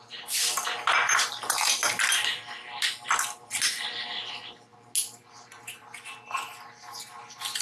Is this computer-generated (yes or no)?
no